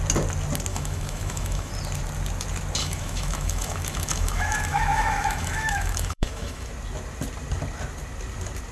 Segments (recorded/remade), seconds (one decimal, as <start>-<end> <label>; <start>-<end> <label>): 0.0-0.7 recorded; 0.7-1.7 remade; 1.7-2.8 recorded; 2.8-6.7 remade; 6.7-8.7 recorded